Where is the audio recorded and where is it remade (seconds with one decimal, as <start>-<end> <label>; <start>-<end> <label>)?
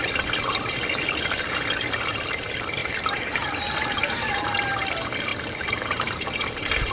0.0-2.8 recorded; 2.8-4.7 remade; 4.7-5.3 recorded; 5.3-6.9 remade